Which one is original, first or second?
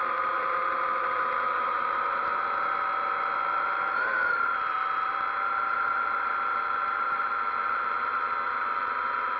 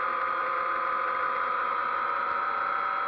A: second